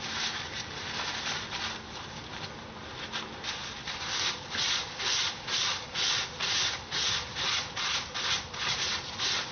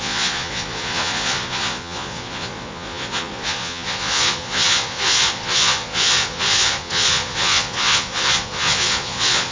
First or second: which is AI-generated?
second